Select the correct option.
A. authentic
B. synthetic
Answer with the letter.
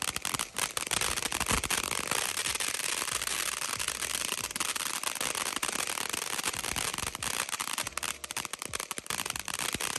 A